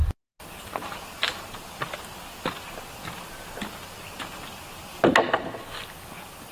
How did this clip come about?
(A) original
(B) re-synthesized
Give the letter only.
A